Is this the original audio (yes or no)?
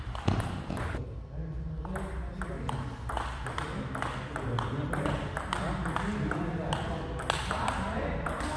yes